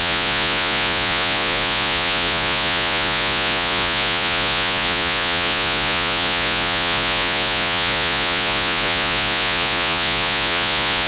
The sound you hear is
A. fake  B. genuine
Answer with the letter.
A